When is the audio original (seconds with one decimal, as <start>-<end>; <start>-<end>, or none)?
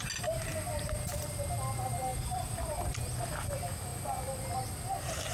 0.0-2.1; 2.7-5.3